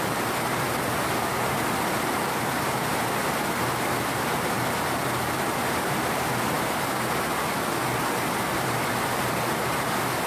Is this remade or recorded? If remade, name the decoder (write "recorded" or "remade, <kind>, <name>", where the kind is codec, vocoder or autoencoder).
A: recorded